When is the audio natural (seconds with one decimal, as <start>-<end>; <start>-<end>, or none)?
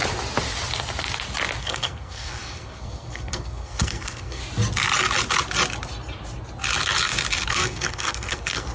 0.0-1.6; 4.4-7.5